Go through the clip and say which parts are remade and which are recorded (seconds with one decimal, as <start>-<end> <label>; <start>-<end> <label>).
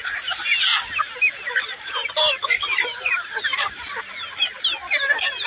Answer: 0.0-5.5 recorded